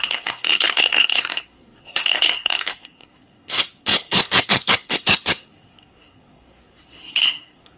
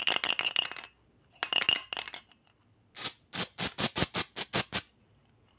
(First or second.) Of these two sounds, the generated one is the first